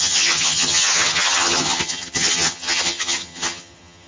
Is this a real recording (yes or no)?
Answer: no